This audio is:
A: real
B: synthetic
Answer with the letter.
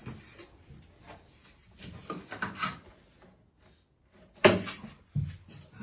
A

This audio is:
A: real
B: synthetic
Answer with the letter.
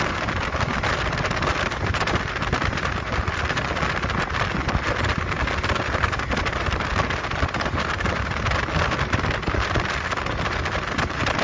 A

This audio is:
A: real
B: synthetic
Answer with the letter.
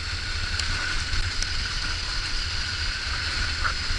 A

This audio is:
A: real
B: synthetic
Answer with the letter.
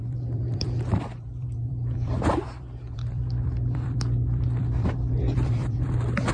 B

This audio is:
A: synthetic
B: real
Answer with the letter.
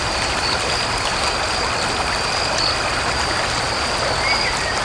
B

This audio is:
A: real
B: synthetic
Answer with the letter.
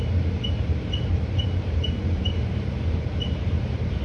B